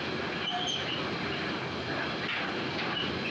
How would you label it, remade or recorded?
recorded